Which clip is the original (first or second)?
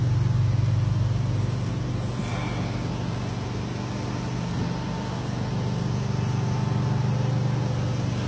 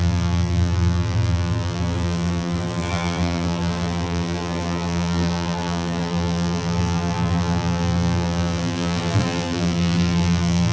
first